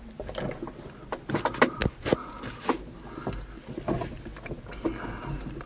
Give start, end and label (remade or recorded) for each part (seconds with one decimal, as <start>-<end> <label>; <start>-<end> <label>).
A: 0.0-5.7 recorded